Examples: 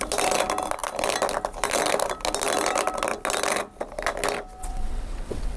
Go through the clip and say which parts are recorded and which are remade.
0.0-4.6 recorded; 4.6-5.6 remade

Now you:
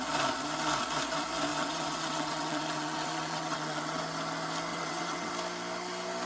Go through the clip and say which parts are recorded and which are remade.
0.0-1.5 recorded; 1.5-4.0 remade; 4.0-4.7 recorded; 4.7-5.3 remade; 5.3-6.3 recorded

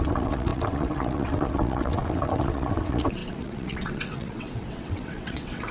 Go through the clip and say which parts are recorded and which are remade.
0.0-5.7 remade